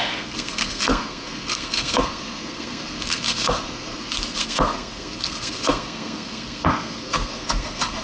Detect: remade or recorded remade